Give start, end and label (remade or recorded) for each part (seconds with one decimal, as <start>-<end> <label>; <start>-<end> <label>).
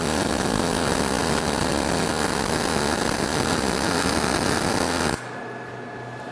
0.0-6.3 recorded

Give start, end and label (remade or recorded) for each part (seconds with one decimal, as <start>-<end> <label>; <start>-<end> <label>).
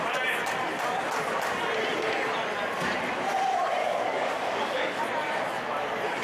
0.0-3.8 recorded; 3.8-5.0 remade; 5.0-6.2 recorded